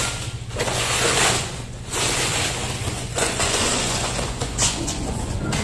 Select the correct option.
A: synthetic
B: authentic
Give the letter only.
A